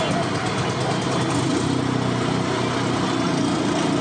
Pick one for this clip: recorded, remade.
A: recorded